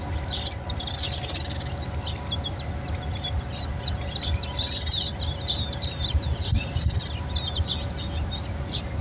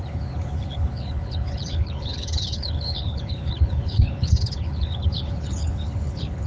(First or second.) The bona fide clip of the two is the first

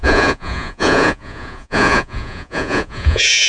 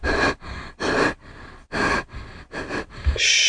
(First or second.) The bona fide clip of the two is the second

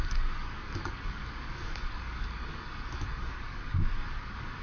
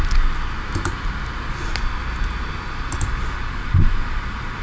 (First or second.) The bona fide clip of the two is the second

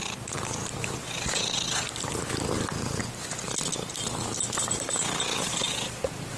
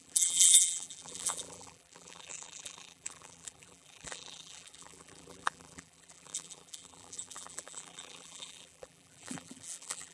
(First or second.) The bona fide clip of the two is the first